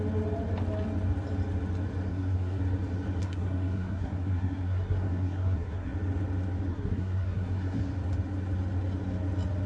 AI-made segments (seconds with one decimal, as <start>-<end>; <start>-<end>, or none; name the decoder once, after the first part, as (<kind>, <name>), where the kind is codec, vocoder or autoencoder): 2.1-2.6 (codec, SNAC); 3.2-5.9; 6.7-7.8